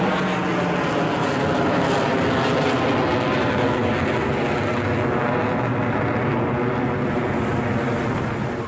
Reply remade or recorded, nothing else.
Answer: recorded